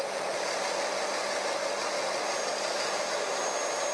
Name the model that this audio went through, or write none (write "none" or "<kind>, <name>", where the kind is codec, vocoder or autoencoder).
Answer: none